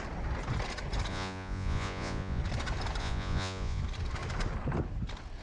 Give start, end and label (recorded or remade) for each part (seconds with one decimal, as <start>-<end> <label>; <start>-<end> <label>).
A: 0.0-1.1 recorded; 1.1-2.4 remade; 2.4-3.0 recorded; 3.0-3.8 remade; 3.8-5.4 recorded